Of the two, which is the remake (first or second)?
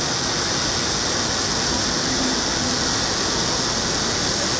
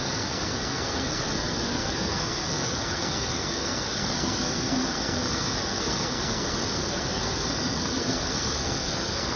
second